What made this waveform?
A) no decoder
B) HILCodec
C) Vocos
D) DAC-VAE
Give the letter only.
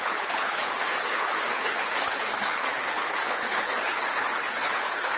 B